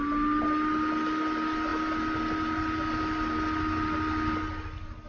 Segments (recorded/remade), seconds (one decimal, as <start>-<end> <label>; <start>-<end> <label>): 0.0-5.1 recorded